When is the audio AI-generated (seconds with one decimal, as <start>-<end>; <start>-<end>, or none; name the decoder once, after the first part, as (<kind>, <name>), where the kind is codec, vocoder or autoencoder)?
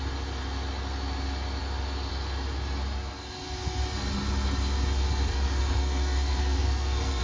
5.3-7.2 (codec, SNAC)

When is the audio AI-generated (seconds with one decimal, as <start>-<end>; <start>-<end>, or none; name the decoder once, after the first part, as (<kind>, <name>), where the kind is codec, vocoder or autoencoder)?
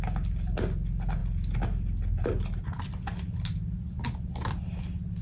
none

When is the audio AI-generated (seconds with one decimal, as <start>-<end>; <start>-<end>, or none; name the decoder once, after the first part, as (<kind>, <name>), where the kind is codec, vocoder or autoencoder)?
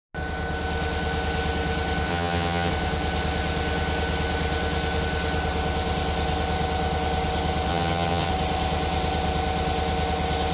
2.1-2.7 (vocoder, HiFi-GAN); 7.7-8.3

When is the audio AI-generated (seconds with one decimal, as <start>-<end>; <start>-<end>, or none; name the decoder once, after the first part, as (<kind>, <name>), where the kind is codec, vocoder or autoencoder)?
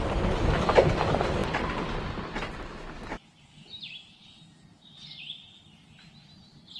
none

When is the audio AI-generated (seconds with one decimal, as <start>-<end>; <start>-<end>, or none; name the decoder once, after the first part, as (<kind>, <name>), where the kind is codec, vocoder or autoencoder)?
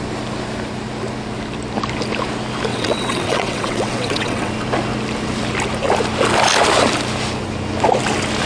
2.7-4.5 (vocoder, WaveNeXt)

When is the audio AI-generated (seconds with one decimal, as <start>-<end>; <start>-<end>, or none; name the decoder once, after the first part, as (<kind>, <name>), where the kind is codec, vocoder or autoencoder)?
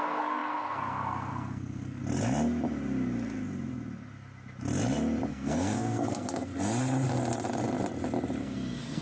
0.0-2.0 (codec, SNAC); 5.3-6.5; 8.4-9.0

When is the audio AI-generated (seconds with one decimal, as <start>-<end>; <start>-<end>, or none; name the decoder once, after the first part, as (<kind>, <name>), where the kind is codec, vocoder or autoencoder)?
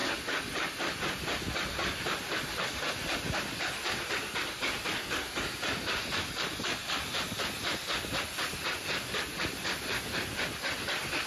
none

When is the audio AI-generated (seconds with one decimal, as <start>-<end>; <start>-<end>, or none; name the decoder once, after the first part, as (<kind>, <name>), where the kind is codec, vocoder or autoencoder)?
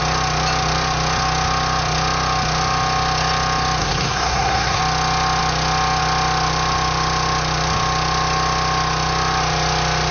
3.8-4.8 (codec, SNAC)